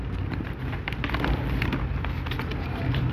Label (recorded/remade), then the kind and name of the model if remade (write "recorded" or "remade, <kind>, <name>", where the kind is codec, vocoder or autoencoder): recorded